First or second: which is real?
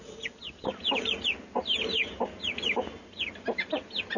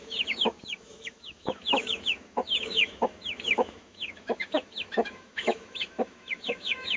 first